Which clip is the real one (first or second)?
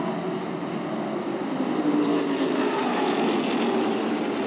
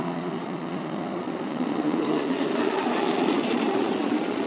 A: first